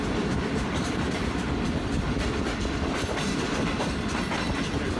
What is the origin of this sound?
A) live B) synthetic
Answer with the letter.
B